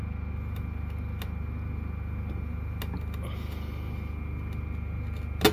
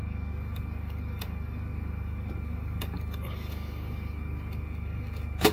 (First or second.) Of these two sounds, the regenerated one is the second